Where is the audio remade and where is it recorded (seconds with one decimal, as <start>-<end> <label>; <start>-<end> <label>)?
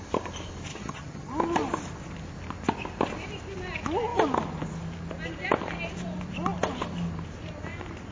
0.0-0.7 recorded; 0.7-1.3 remade; 1.3-8.1 recorded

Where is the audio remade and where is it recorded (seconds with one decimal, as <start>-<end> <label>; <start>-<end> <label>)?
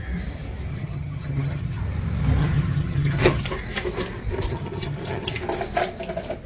0.0-0.7 recorded; 0.7-1.8 remade; 1.8-2.4 recorded; 2.4-3.4 remade; 3.4-4.5 recorded; 4.5-5.4 remade; 5.4-6.5 recorded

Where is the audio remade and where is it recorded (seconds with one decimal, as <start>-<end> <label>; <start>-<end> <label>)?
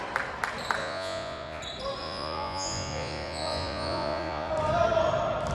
0.0-0.8 recorded; 0.8-1.6 remade; 1.6-2.0 recorded; 2.0-4.5 remade; 4.5-5.5 recorded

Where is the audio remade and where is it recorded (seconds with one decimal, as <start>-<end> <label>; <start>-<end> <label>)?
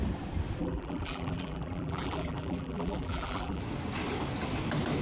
0.0-0.6 recorded; 0.6-3.6 remade; 3.6-5.0 recorded